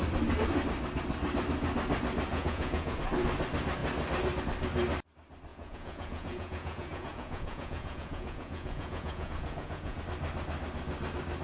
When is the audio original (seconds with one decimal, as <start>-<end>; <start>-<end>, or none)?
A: 0.0-2.3; 3.0-5.5; 10.0-11.4